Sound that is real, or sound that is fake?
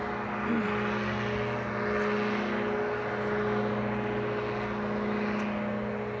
real